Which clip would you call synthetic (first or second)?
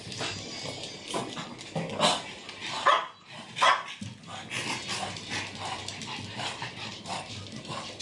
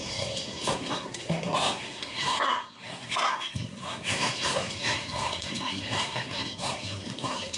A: second